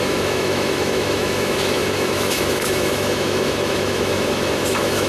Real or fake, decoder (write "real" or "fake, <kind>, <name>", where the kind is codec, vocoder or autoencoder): fake, autoencoder, DAC-VAE